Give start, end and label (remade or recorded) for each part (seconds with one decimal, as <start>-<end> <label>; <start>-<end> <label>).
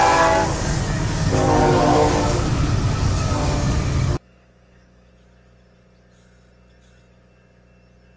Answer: 0.0-0.4 recorded; 0.4-5.1 remade; 5.1-8.2 recorded